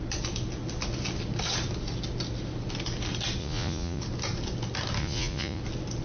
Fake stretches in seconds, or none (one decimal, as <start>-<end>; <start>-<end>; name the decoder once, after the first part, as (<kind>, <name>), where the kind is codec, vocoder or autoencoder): 3.4-4.0 (vocoder, Vocos); 5.0-5.6